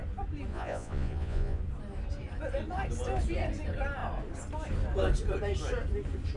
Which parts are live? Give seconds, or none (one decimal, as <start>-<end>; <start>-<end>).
0.0-0.5; 1.6-6.4